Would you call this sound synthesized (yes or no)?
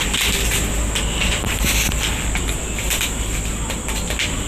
no